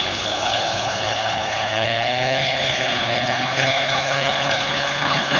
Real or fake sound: fake